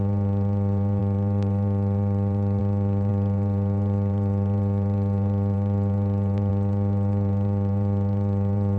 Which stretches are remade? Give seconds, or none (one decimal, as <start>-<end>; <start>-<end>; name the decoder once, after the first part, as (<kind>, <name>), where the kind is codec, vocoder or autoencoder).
0.0-8.8 (vocoder, BigVGAN v2)